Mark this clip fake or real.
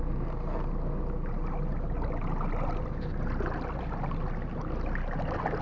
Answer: real